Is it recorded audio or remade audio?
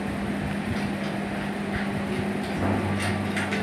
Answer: recorded